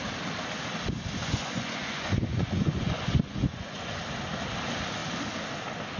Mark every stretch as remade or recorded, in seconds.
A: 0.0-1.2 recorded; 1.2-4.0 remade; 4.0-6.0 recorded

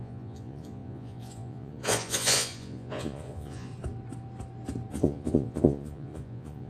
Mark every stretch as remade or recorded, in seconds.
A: 0.0-3.7 remade; 3.7-4.9 recorded; 4.9-6.7 remade

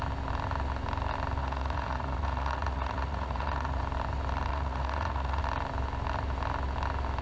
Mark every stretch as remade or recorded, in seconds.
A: 0.0-1.4 recorded; 1.4-3.8 remade; 3.8-4.5 recorded; 4.5-5.4 remade; 5.4-7.2 recorded

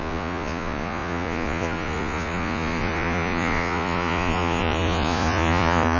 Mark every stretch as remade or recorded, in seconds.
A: 0.0-6.0 remade

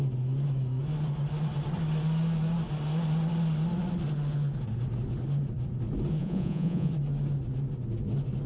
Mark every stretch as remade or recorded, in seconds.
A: 0.0-6.2 recorded; 6.2-6.9 remade; 6.9-8.5 recorded

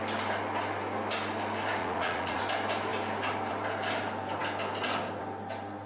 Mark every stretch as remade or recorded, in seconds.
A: 0.0-1.8 recorded; 1.8-2.4 remade; 2.4-5.9 recorded